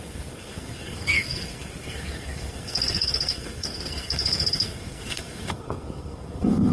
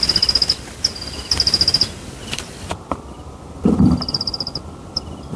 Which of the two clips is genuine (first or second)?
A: second